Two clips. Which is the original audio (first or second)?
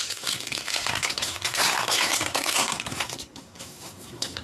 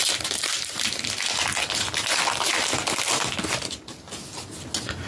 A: second